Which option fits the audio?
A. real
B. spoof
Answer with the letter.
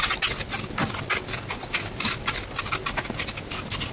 A